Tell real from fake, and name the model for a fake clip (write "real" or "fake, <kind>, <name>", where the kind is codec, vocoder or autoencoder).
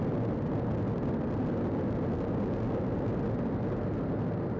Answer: real